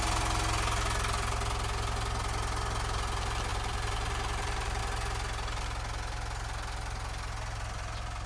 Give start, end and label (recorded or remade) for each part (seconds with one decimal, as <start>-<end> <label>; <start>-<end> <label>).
0.0-3.5 recorded; 3.5-4.8 remade; 4.8-8.3 recorded